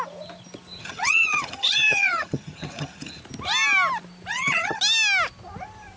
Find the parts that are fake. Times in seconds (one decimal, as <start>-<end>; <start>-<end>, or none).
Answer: 0.8-3.2; 4.3-4.8